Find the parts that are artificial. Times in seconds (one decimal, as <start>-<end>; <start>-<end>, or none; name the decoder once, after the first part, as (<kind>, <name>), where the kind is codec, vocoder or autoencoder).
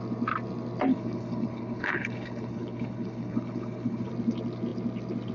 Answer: 0.9-4.1 (codec, HILCodec)